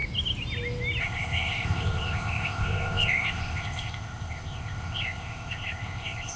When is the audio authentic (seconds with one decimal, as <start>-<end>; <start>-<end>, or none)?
0.0-1.0